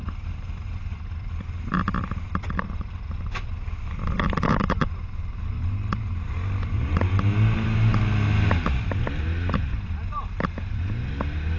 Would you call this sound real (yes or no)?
yes